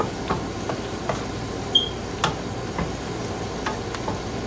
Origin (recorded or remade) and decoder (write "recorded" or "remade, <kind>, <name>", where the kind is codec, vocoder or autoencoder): recorded